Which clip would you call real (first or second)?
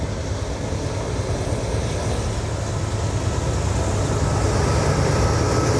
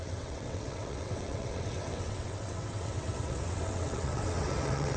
first